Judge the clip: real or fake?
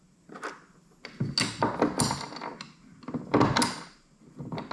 real